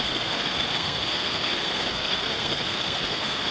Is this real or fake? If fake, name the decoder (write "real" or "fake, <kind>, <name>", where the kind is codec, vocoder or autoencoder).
fake, codec, SNAC